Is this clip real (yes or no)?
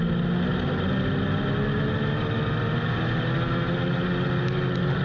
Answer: yes